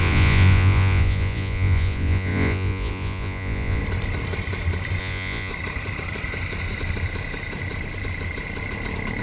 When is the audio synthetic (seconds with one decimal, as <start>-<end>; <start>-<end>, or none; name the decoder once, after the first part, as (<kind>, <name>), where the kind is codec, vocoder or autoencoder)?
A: 0.0-3.8 (vocoder, Vocos); 5.0-5.5